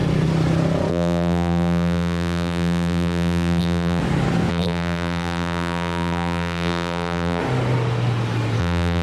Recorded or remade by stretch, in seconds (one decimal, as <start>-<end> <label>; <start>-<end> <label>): 0.0-0.9 recorded; 0.9-4.0 remade; 4.0-4.5 recorded; 4.5-7.4 remade; 7.4-8.6 recorded; 8.6-9.0 remade